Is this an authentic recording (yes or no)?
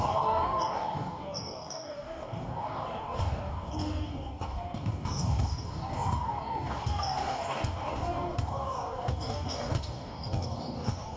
no